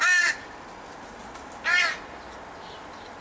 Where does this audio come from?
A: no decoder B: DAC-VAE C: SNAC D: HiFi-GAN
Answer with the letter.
A